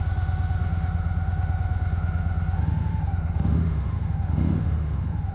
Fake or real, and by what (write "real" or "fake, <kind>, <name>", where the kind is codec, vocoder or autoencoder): fake, autoencoder, DAC-VAE